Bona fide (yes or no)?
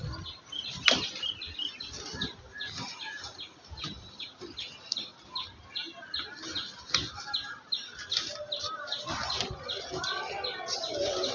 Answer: yes